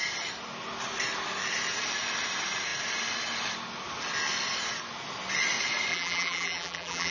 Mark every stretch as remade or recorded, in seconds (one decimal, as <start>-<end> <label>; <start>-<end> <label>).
0.0-5.9 recorded; 5.9-7.1 remade